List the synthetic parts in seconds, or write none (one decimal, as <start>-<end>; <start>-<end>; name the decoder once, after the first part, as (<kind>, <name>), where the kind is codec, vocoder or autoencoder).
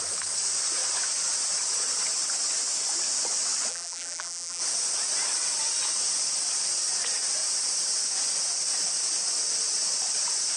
3.7-4.6 (vocoder, BigVGAN v2)